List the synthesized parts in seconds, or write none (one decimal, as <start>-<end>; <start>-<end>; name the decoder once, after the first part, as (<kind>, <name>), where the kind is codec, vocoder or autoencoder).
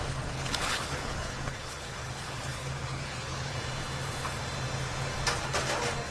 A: 0.0-3.5 (codec, HILCodec)